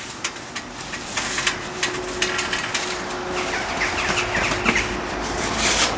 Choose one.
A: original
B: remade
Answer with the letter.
A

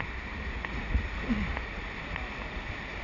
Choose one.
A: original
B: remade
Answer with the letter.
A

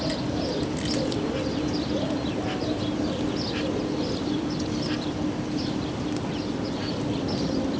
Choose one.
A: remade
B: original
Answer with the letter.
B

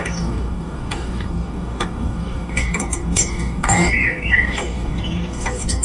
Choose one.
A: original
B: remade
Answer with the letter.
B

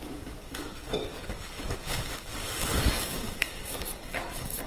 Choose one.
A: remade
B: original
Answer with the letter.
A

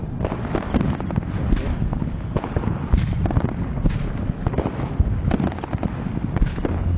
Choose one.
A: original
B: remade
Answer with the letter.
A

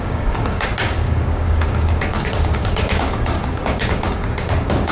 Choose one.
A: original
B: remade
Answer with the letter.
B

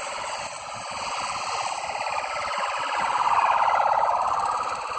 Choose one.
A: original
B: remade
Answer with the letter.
A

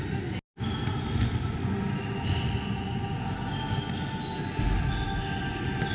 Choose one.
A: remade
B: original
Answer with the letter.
B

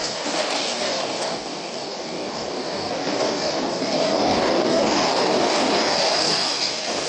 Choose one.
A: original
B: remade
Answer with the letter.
B